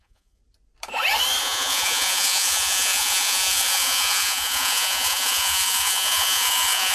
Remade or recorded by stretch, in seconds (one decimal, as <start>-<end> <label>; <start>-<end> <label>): 0.0-0.4 remade; 0.4-1.4 recorded; 1.4-6.9 remade